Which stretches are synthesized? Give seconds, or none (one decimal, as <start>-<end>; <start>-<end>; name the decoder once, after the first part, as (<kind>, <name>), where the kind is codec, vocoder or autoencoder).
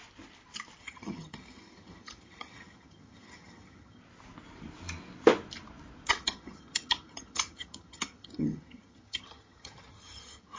0.8-4.0 (vocoder, HiFi-GAN); 6.1-10.6